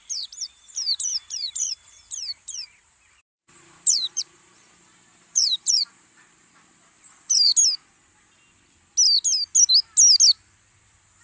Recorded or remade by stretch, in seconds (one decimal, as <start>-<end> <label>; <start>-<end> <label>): 0.0-7.5 remade; 7.5-11.2 recorded